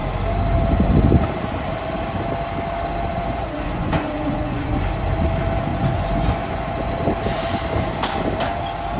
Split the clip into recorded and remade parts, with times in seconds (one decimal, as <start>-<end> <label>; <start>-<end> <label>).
0.0-3.1 recorded; 3.1-4.7 remade; 4.7-5.7 recorded; 5.7-6.9 remade; 6.9-9.0 recorded

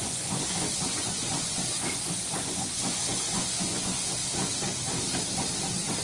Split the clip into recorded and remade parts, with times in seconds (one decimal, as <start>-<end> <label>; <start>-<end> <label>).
0.0-4.2 remade; 4.2-6.0 recorded

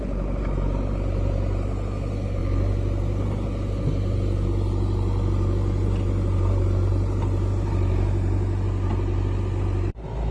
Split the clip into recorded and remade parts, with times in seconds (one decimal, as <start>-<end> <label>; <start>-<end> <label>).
0.0-10.3 recorded

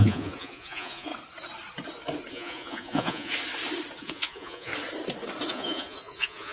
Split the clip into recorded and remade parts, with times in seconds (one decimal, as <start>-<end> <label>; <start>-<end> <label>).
0.0-1.1 remade; 1.1-2.3 recorded; 2.3-3.3 remade; 3.3-4.0 recorded; 4.0-4.7 remade; 4.7-5.5 recorded; 5.5-6.5 remade

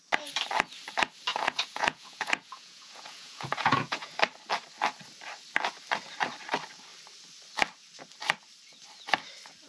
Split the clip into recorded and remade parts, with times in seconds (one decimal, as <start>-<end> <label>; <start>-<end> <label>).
0.0-1.3 recorded; 1.3-4.1 remade; 4.1-9.7 recorded

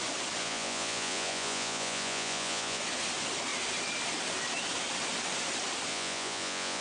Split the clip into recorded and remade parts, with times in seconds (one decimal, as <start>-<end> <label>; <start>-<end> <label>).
0.0-0.4 recorded; 0.4-2.8 remade; 2.8-5.9 recorded; 5.9-6.8 remade